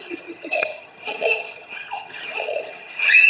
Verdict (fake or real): fake